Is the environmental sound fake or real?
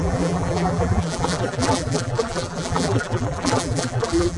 fake